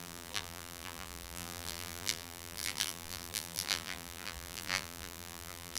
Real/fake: fake